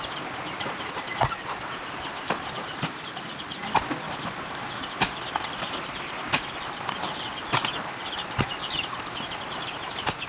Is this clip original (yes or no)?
yes